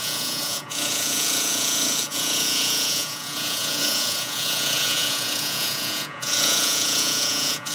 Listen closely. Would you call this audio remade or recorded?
remade